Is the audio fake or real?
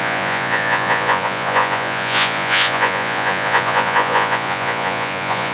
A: fake